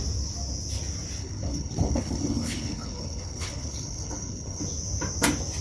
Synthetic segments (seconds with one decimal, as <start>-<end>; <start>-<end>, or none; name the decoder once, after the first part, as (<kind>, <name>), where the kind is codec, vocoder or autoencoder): 1.2-4.6 (codec, HILCodec)